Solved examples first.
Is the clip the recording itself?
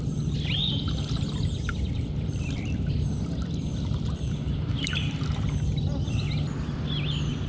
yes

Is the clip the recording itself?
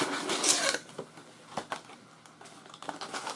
yes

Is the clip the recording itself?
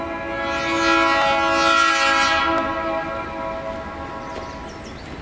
yes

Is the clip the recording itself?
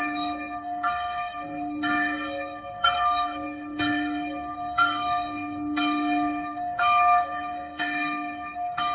no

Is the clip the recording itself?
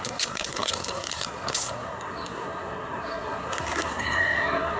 no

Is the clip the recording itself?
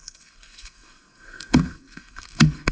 no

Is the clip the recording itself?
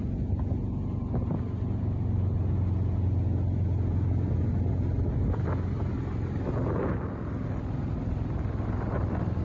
yes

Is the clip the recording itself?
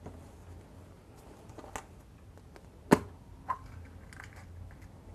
yes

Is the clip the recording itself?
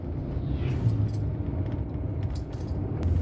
yes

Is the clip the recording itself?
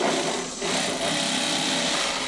yes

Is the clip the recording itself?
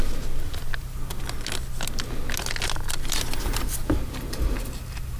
yes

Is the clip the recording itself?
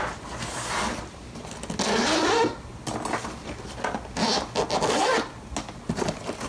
yes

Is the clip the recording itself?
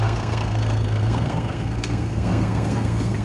no